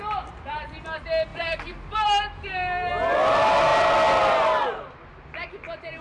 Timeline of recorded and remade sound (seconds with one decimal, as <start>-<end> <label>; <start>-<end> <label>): 0.0-1.3 recorded; 1.3-2.9 remade; 2.9-6.0 recorded